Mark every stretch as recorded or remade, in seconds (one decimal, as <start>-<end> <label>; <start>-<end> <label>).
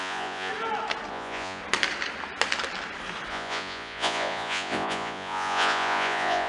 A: 0.0-0.5 remade; 0.5-1.1 recorded; 1.1-1.6 remade; 1.6-3.3 recorded; 3.3-6.5 remade